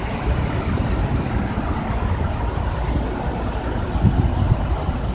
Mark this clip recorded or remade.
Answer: recorded